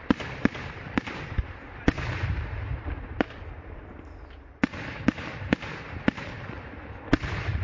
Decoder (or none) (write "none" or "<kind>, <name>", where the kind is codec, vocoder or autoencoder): vocoder, BigVGAN v2